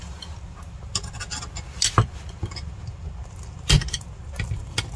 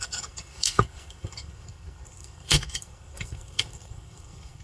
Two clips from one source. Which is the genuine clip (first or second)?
first